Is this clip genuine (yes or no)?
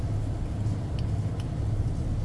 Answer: yes